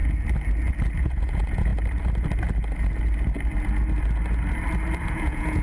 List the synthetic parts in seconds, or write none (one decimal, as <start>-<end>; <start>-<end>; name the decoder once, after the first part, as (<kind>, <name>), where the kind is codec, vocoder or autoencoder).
1.0-1.7 (vocoder, Vocos); 5.1-5.6